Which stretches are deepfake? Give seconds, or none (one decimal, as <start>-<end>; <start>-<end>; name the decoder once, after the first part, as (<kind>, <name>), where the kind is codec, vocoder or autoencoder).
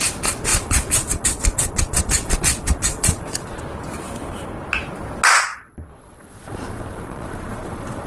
0.5-3.6 (vocoder, Vocos); 5.5-8.1